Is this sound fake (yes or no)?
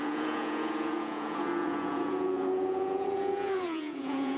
yes